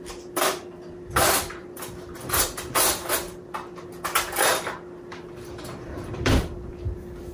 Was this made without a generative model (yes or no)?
no